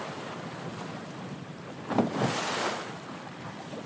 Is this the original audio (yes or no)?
no